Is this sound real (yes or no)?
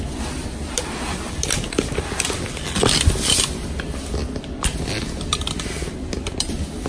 yes